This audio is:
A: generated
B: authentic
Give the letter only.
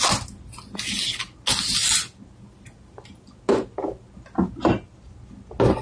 B